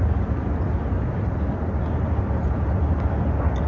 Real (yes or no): yes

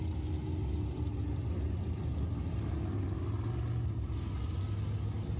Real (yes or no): yes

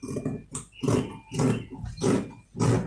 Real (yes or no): yes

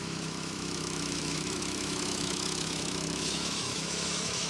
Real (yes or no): no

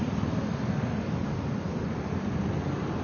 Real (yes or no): yes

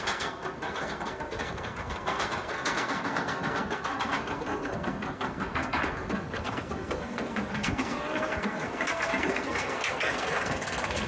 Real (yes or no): no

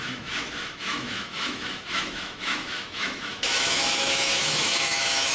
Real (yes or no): no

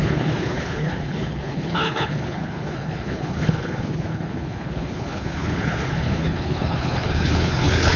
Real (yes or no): no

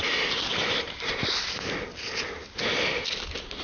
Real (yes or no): yes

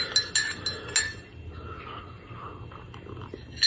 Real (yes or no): yes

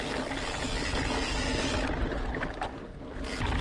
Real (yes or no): yes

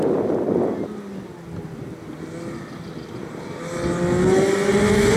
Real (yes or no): yes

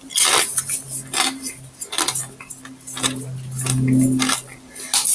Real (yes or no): yes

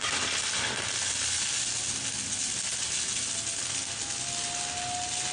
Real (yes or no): yes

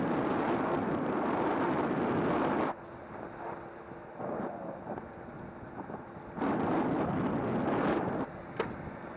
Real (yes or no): yes